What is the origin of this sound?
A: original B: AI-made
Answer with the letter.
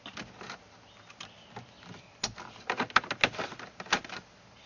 A